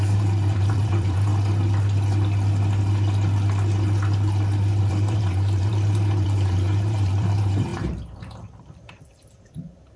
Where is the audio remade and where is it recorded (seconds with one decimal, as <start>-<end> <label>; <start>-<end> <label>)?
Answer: 0.0-1.3 remade; 1.3-4.8 recorded; 4.8-10.0 remade